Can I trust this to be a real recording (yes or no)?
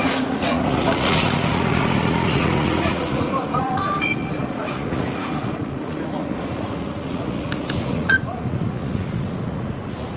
no